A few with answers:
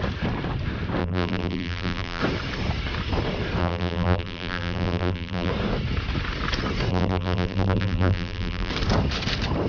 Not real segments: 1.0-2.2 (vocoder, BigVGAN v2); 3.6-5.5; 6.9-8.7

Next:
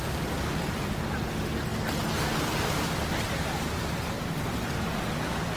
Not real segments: none

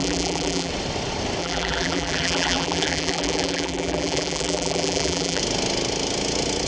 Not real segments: 0.0-0.7 (vocoder, BigVGAN v2); 1.4-5.4